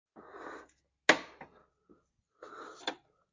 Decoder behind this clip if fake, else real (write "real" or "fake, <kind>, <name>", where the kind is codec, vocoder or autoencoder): real